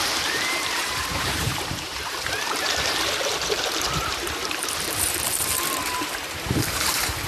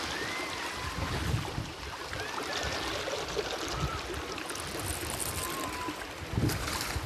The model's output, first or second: first